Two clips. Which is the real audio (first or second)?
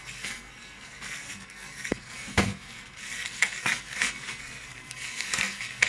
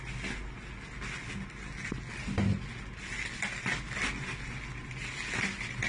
second